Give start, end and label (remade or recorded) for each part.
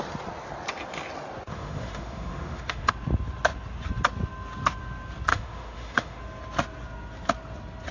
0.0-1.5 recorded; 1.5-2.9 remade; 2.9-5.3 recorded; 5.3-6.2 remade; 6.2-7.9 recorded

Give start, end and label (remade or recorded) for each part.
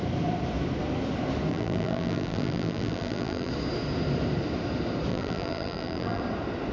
0.0-1.5 recorded; 1.5-3.5 remade; 3.5-5.1 recorded; 5.1-6.2 remade; 6.2-6.7 recorded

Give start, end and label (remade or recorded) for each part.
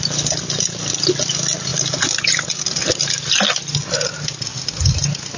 0.0-5.4 recorded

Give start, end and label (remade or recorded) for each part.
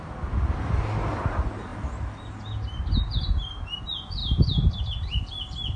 0.0-5.8 recorded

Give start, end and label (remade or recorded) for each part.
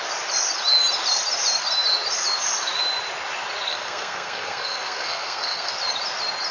0.0-3.7 recorded; 3.7-5.7 remade; 5.7-6.5 recorded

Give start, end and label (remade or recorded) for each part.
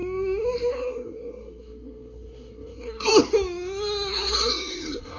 0.0-0.7 recorded; 0.7-3.1 remade; 3.1-4.1 recorded; 4.1-5.2 remade